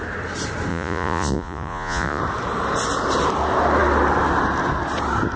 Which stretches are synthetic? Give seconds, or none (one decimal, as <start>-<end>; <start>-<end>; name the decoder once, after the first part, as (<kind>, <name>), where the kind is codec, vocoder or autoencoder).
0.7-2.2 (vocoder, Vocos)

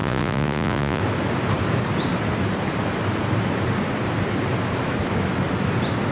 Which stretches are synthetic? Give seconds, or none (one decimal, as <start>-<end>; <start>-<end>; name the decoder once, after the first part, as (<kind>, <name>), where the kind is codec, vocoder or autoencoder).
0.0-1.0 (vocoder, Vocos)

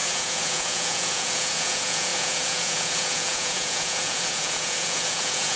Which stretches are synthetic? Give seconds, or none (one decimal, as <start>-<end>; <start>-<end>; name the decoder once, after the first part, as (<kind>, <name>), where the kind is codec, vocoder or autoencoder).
0.0-5.6 (vocoder, Vocos)

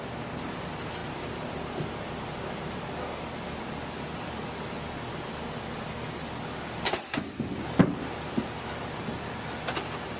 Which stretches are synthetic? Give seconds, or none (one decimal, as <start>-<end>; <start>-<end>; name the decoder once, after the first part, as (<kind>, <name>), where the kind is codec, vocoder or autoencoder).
none